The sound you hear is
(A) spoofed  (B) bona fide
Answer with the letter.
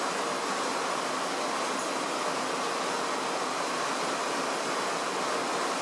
B